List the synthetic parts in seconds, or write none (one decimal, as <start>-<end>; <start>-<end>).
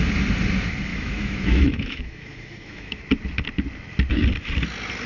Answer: 0.9-3.0